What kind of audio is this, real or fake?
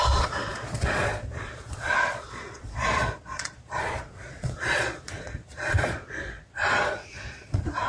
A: fake